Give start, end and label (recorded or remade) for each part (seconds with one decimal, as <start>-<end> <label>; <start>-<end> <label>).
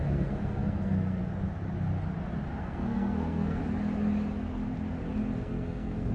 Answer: 0.0-1.2 remade; 1.2-2.6 recorded; 2.6-3.6 remade; 3.6-5.4 recorded; 5.4-6.1 remade